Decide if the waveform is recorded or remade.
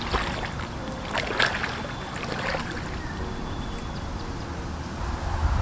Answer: recorded